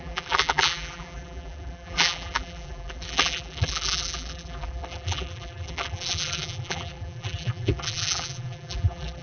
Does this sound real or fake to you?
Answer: fake